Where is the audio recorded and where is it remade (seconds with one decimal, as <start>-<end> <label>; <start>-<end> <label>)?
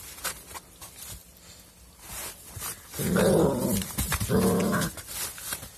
0.0-5.8 recorded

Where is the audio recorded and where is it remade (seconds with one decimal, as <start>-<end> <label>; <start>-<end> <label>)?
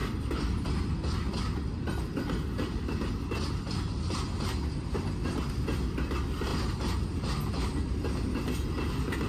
0.0-9.3 recorded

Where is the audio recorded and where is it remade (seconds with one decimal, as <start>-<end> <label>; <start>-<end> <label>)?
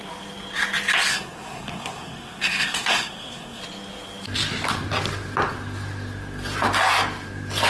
0.0-1.1 recorded; 1.1-3.6 remade; 3.6-7.7 recorded